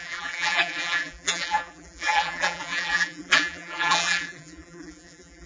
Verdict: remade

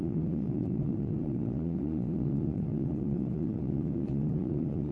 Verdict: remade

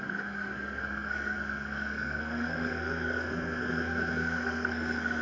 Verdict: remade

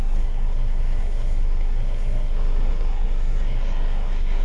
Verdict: remade